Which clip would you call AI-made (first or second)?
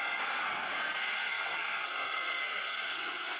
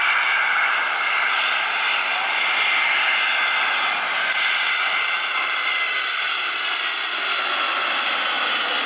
first